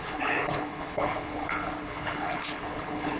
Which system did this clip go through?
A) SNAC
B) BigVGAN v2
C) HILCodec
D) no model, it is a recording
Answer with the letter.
C